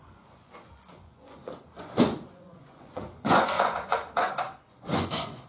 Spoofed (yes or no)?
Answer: yes